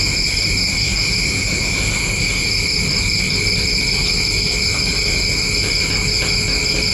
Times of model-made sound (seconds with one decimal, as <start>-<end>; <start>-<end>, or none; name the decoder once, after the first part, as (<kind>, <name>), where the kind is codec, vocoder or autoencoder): 0.9-2.2 (vocoder, BigVGAN v2); 4.9-5.9